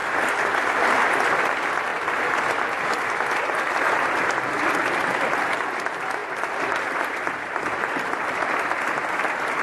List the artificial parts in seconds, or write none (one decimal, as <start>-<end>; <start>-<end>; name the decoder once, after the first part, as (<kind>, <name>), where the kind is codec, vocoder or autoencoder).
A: 0.0-0.6 (vocoder, BigVGAN v2); 1.9-4.6; 6.2-8.8